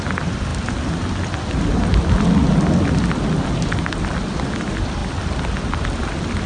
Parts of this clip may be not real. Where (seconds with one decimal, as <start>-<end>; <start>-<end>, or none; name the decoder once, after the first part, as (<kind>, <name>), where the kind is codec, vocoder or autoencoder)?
none